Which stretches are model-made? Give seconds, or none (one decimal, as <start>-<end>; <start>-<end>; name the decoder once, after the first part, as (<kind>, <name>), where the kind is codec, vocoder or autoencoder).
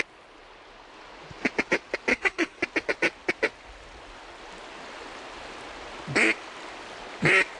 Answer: 2.1-2.6 (codec, SNAC)